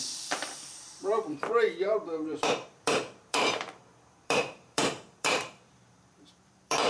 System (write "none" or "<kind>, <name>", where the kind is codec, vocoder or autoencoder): vocoder, BigVGAN v2